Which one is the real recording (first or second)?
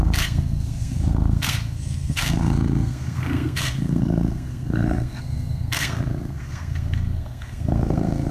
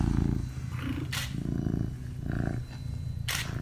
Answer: second